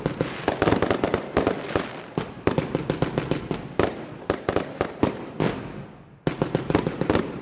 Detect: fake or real real